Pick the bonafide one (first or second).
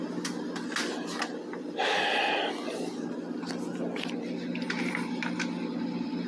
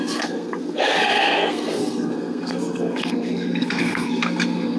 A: first